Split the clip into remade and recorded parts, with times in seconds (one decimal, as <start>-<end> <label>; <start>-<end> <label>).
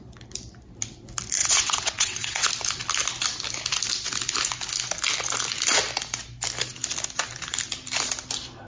0.0-1.4 recorded; 1.4-2.5 remade; 2.5-8.7 recorded